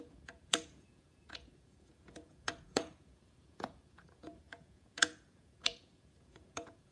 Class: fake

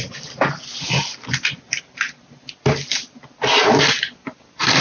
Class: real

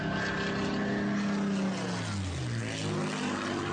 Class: real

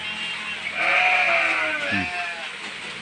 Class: real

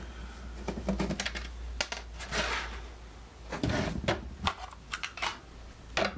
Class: real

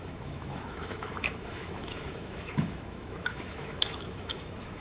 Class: fake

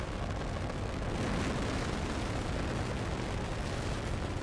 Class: real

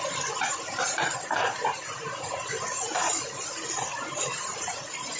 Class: real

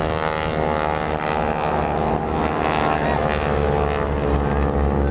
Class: real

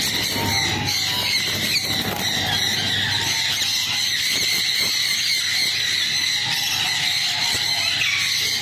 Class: real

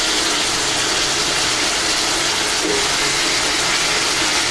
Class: real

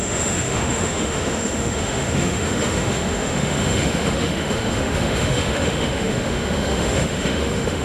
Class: fake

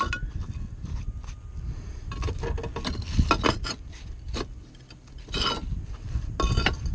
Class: real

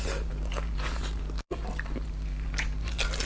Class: real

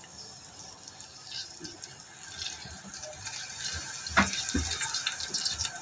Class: real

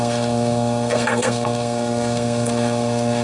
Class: fake